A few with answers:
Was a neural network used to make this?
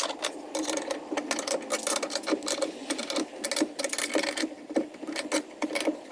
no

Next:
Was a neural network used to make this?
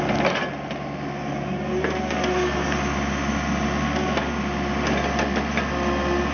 no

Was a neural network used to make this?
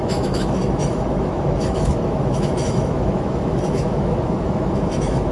yes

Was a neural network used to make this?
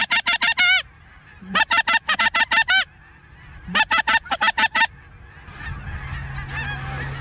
no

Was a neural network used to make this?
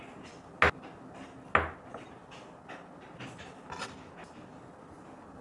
no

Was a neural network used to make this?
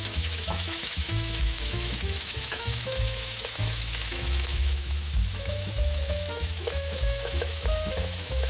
yes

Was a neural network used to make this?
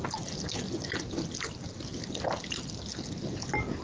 no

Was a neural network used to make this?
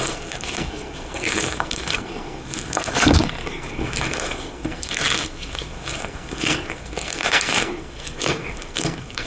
yes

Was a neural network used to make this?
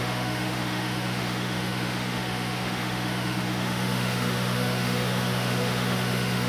yes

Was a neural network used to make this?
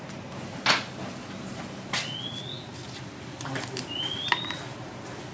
no